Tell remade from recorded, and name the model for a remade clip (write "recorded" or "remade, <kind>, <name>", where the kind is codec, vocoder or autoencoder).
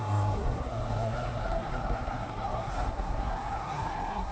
remade, codec, SNAC